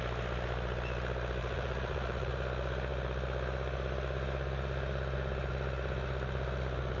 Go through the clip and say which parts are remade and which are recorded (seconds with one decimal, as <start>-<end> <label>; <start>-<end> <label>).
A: 0.0-1.4 recorded; 1.4-2.3 remade; 2.3-7.0 recorded